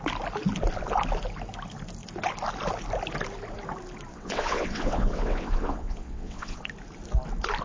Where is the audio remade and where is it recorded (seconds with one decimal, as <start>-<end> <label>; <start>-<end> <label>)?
0.0-4.1 recorded; 4.1-6.6 remade; 6.6-7.6 recorded